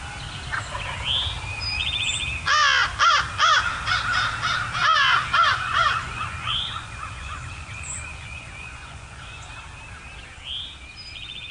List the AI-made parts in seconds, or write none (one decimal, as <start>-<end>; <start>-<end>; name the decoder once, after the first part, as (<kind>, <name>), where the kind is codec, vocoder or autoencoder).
5.5-9.5 (vocoder, Vocos)